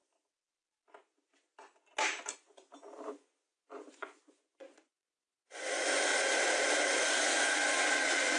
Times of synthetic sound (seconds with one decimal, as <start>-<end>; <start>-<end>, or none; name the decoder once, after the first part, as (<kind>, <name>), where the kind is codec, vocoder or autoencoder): 3.1-6.1 (vocoder, Vocos); 7.3-8.4